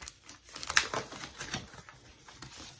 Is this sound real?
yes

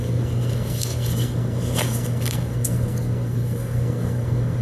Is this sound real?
no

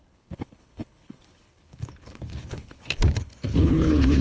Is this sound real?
no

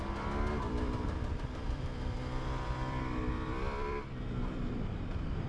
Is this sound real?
no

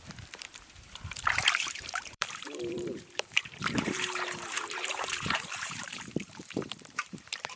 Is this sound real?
no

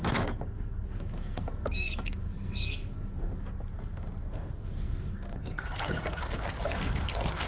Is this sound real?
no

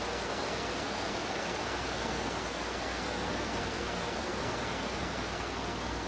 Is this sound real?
no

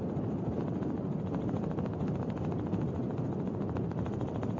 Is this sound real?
no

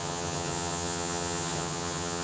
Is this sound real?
no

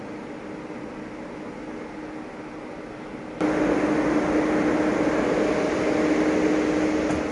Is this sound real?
yes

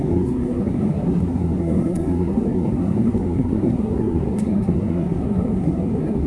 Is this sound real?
no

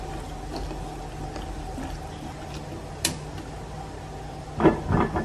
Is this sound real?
yes